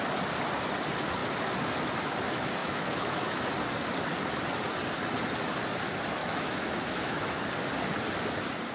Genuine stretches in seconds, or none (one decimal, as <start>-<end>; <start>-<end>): 0.0-2.6; 3.5-6.2; 7.4-8.7